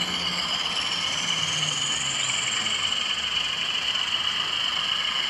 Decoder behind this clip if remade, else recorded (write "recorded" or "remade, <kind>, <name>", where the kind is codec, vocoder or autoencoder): recorded